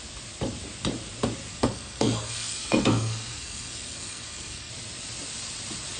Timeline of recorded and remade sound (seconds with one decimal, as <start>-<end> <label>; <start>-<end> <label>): 0.0-1.5 recorded; 1.5-4.7 remade; 4.7-6.0 recorded